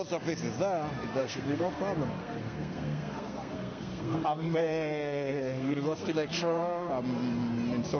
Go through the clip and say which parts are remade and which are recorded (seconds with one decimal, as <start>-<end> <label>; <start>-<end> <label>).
0.0-1.2 recorded; 1.2-1.8 remade; 1.8-2.2 recorded; 2.2-6.9 remade; 6.9-8.0 recorded